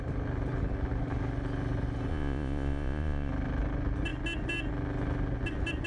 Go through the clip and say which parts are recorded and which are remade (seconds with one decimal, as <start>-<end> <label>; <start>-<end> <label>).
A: 0.0-2.1 recorded; 2.1-3.3 remade; 3.3-5.9 recorded